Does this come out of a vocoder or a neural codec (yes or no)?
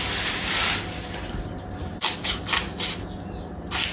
no